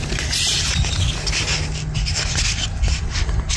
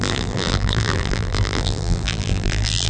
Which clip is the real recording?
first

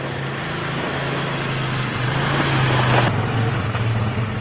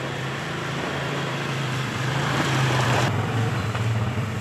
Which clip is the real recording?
first